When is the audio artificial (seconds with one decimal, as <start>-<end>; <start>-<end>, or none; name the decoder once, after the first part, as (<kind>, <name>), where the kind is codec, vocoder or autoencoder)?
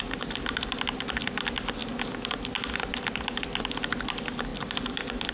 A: none